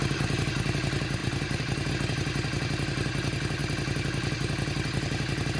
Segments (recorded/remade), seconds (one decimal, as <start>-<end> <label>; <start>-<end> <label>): 0.0-1.2 recorded; 1.2-1.9 remade; 1.9-5.6 recorded